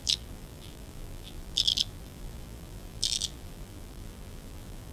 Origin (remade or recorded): remade